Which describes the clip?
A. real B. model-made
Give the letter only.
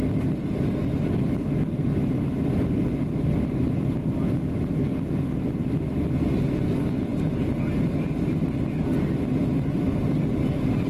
A